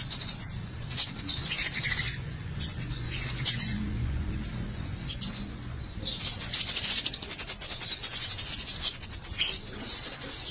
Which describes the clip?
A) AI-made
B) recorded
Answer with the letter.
A